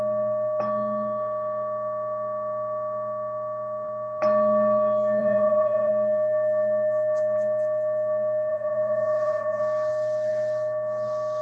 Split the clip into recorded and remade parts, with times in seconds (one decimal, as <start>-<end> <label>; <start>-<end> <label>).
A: 0.0-5.2 recorded; 5.2-5.9 remade; 5.9-8.5 recorded; 8.5-9.6 remade; 9.6-11.4 recorded

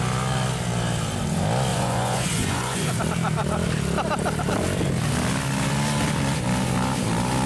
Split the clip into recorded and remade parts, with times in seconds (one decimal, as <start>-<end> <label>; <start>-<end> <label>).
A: 0.0-1.7 recorded; 1.7-3.0 remade; 3.0-7.5 recorded

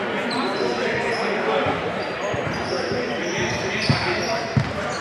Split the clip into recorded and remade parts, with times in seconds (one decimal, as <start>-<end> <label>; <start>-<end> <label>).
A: 0.0-5.0 recorded

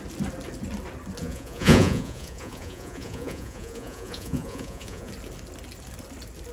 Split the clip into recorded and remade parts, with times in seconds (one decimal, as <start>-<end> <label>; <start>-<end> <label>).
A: 0.0-1.2 recorded; 1.2-5.1 remade; 5.1-6.5 recorded

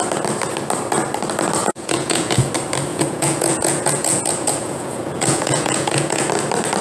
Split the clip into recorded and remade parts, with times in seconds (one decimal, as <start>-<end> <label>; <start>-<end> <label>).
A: 0.0-1.6 recorded; 1.6-2.5 remade; 2.5-2.9 recorded; 2.9-6.3 remade; 6.3-6.8 recorded

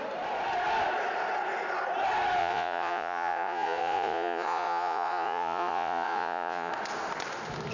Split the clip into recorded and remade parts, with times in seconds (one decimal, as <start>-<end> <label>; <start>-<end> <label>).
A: 0.0-2.4 recorded; 2.4-6.7 remade; 6.7-7.7 recorded

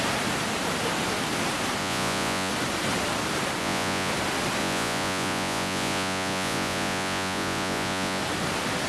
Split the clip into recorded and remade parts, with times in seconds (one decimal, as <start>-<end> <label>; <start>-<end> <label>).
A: 0.0-1.8 recorded; 1.8-2.5 remade; 2.5-3.6 recorded; 3.6-4.1 remade; 4.1-4.6 recorded; 4.6-8.2 remade; 8.2-8.9 recorded

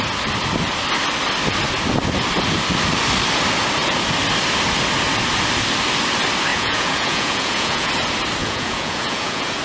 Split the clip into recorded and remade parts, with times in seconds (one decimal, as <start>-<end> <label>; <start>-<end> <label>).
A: 0.0-6.5 recorded; 6.5-7.9 remade; 7.9-8.4 recorded; 8.4-9.6 remade